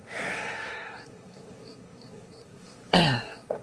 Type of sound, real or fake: fake